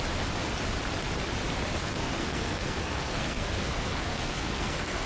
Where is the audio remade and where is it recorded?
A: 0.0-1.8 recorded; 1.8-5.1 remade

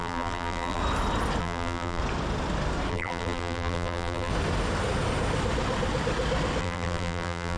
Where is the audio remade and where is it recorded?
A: 0.0-0.8 remade; 0.8-1.4 recorded; 1.4-2.0 remade; 2.0-2.9 recorded; 2.9-4.3 remade; 4.3-6.6 recorded; 6.6-7.6 remade

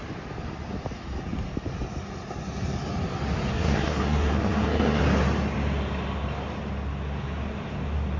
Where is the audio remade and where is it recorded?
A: 0.0-3.5 recorded; 3.5-5.0 remade; 5.0-8.2 recorded

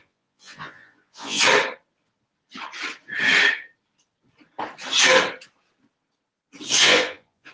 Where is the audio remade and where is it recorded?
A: 0.0-1.4 remade; 1.4-6.8 recorded; 6.8-7.5 remade

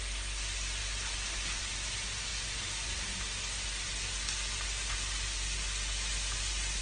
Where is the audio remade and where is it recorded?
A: 0.0-6.8 recorded

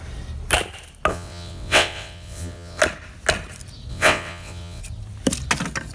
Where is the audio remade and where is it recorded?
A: 0.0-1.1 recorded; 1.1-2.8 remade; 2.8-3.9 recorded; 3.9-4.8 remade; 4.8-5.9 recorded

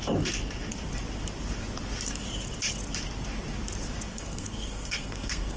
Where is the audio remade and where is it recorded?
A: 0.0-4.1 recorded; 4.1-5.6 remade